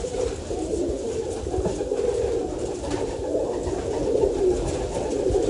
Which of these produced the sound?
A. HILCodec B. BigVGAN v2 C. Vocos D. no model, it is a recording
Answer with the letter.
D